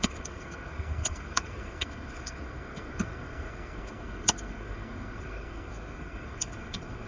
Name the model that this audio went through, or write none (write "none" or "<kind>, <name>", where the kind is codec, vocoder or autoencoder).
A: codec, SNAC